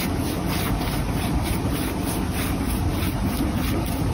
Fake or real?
real